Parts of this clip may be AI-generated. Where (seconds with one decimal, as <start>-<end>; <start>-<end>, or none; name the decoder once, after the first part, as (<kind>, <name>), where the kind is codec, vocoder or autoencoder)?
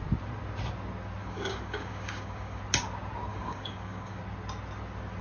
1.2-2.6 (codec, DAC); 3.3-4.2